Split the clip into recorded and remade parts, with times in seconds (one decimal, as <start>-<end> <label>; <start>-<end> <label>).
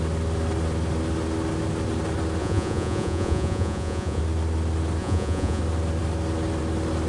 0.0-2.4 recorded; 2.4-4.2 remade; 4.2-5.0 recorded; 5.0-5.6 remade; 5.6-7.1 recorded